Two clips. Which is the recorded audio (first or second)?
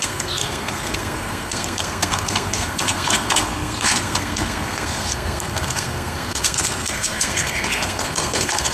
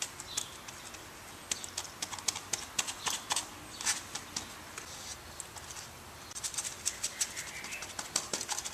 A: second